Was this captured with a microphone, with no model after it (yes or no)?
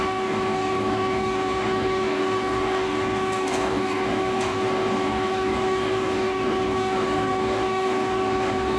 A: no